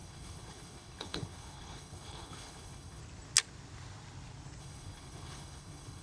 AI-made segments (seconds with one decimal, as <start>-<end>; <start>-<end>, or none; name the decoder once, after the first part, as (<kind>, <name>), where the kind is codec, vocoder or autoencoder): 0.0-3.0 (codec, HILCodec); 4.6-6.0